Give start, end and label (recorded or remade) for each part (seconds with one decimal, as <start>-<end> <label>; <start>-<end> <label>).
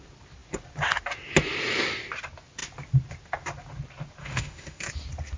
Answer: 0.0-4.2 recorded; 4.2-4.9 remade; 4.9-5.4 recorded